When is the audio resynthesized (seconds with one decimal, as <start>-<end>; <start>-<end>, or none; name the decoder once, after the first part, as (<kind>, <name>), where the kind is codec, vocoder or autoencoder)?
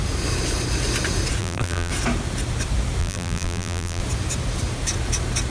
1.4-1.9 (vocoder, BigVGAN v2); 3.0-4.0